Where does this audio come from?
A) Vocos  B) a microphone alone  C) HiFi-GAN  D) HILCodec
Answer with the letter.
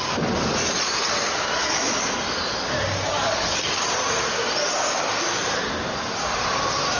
B